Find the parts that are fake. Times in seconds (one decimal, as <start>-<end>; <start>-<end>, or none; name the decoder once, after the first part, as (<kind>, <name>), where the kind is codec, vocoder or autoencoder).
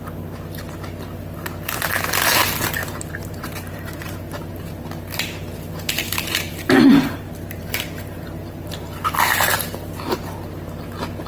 2.8-4.9 (vocoder, BigVGAN v2); 6.0-8.7